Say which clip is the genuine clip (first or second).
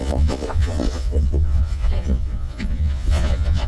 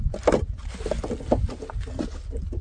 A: second